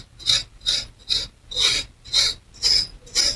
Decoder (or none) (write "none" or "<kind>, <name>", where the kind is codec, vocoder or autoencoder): none